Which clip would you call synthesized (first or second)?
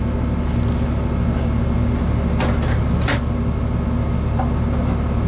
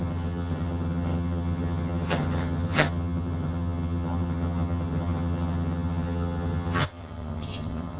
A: second